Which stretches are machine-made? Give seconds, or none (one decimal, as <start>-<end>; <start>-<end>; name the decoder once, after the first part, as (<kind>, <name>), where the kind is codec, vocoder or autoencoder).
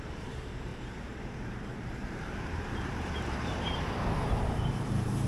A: 0.0-5.3 (vocoder, BigVGAN v2)